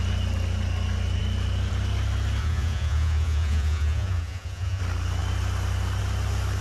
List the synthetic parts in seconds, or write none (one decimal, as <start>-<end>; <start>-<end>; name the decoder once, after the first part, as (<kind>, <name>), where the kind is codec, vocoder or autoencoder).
2.4-4.8 (vocoder, Vocos)